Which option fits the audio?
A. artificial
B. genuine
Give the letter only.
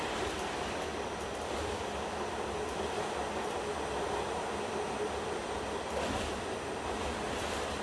B